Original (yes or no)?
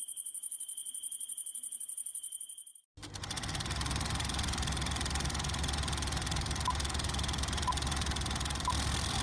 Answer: yes